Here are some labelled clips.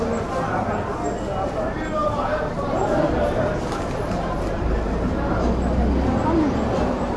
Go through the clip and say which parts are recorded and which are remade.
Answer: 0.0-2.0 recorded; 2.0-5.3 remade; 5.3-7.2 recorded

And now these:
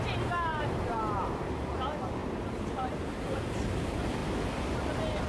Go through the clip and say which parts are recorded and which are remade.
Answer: 0.0-0.5 recorded; 0.5-1.8 remade; 1.8-2.2 recorded; 2.2-3.5 remade; 3.5-5.3 recorded

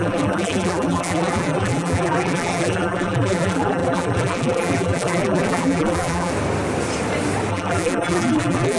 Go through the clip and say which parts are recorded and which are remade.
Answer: 0.0-6.3 remade; 6.3-7.5 recorded; 7.5-8.8 remade

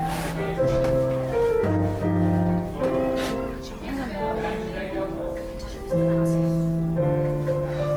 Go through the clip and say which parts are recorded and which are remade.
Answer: 0.0-8.0 recorded

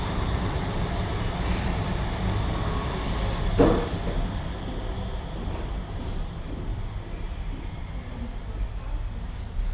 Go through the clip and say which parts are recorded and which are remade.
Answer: 0.0-6.7 recorded; 6.7-8.0 remade; 8.0-9.7 recorded

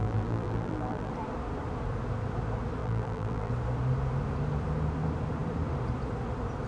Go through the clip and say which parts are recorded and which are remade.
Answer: 0.0-1.1 remade; 1.1-2.8 recorded; 2.8-3.5 remade; 3.5-6.7 recorded

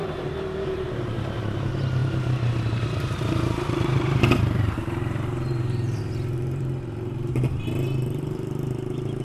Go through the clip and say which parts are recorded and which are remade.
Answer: 0.0-9.2 remade

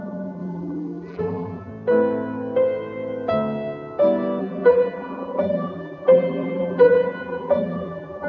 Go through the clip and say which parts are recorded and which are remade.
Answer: 0.0-1.7 remade; 1.7-4.4 recorded; 4.4-8.3 remade